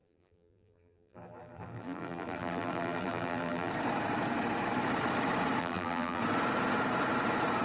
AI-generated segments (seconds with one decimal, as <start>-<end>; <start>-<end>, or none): 0.0-3.7; 5.6-6.2